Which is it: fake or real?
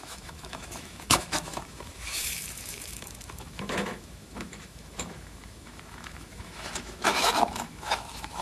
fake